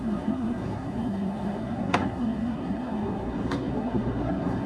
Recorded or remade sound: remade